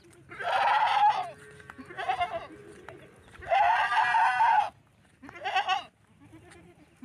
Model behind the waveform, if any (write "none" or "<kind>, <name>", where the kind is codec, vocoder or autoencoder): none